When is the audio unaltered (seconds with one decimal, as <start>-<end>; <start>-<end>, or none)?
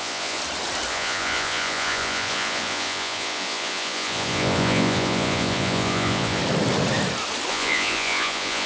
0.4-0.9; 6.4-7.5